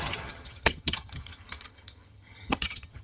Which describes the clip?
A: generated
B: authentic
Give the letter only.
A